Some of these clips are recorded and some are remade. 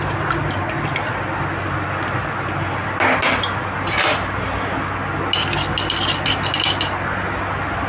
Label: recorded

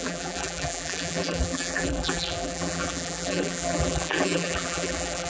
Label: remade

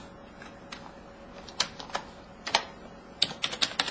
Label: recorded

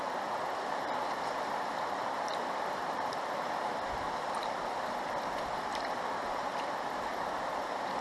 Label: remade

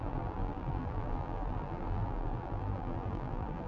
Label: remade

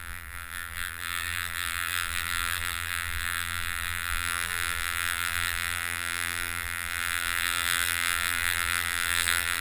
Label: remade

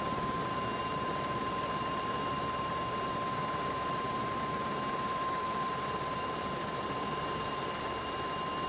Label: remade